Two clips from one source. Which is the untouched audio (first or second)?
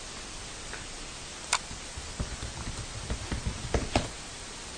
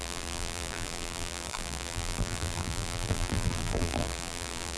first